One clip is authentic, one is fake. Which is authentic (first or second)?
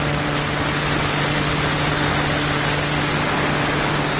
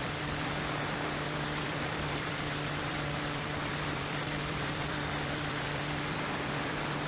first